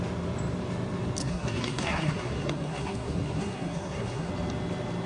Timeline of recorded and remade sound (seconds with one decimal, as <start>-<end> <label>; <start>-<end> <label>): 0.0-1.2 recorded; 1.2-4.3 remade; 4.3-5.1 recorded